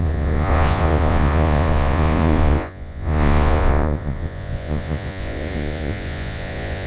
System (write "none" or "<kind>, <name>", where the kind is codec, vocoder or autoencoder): vocoder, Vocos